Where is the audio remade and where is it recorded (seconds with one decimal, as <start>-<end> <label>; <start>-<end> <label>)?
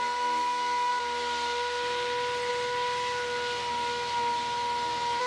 0.0-5.3 recorded